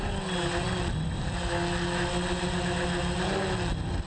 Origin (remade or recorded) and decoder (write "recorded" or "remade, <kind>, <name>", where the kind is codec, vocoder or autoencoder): recorded